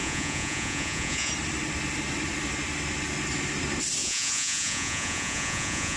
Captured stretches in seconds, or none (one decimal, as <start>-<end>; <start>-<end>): 1.3-4.0